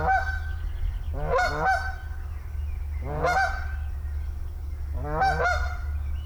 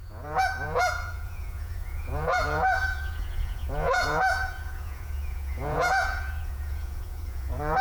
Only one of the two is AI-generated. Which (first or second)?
second